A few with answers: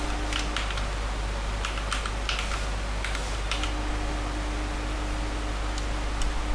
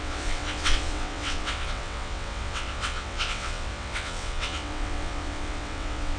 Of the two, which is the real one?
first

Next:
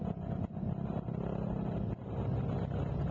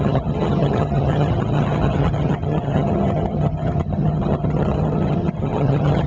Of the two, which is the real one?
first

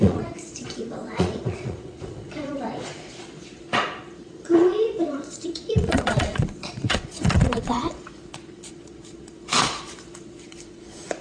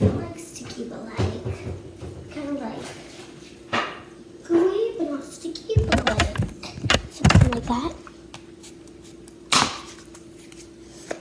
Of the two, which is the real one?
second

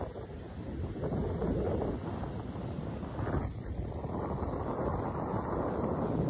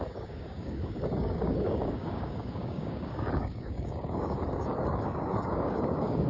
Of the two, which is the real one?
first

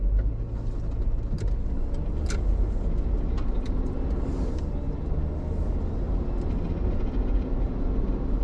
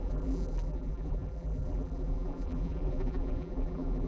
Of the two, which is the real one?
first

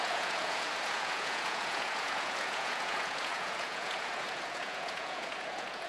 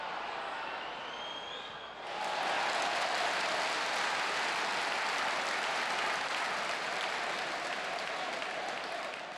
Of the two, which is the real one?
second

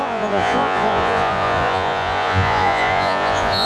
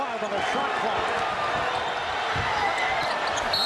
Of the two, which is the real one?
second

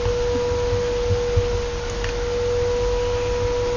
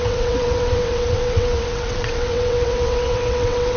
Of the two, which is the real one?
first